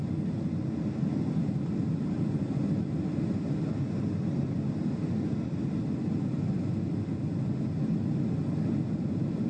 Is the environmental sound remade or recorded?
recorded